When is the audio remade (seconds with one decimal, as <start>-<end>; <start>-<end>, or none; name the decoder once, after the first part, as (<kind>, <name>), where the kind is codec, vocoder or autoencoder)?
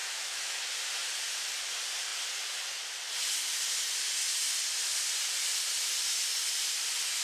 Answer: 0.0-0.6 (autoencoder, DAC-VAE)